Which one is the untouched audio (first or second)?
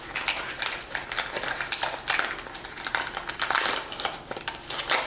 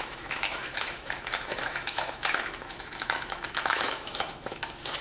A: first